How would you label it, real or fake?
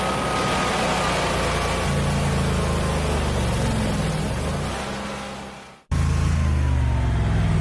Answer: real